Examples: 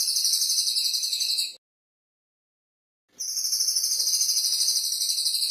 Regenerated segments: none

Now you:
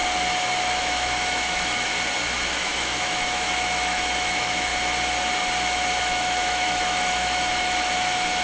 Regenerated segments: 0.8-1.9; 2.5-4.7; 6.0-8.4

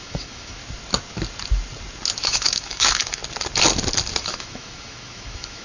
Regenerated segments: 0.0-0.6; 2.2-3.2; 4.2-5.6

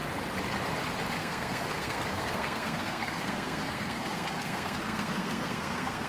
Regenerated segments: 1.2-6.1